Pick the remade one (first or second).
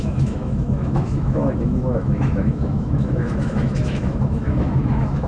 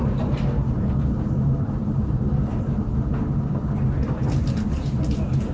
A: first